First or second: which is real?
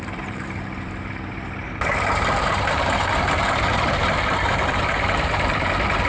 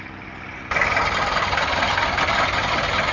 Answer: second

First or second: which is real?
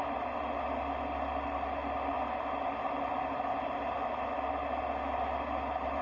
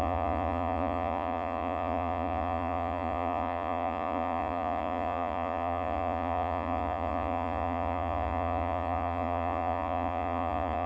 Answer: first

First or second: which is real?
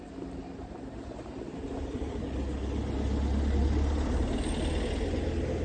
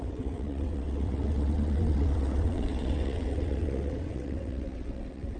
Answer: first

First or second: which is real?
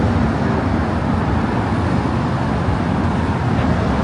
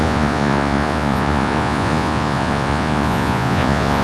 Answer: first